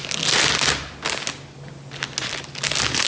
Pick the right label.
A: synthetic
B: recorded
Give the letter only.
B